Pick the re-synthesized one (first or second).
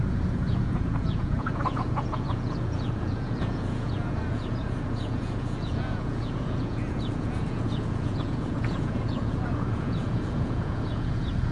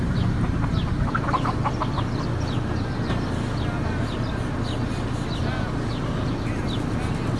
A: first